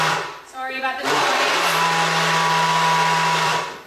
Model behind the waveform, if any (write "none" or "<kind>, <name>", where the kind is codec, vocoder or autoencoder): vocoder, BigVGAN v2